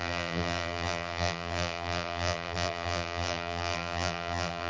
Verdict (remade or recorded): remade